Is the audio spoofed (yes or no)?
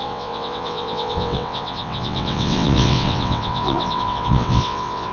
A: yes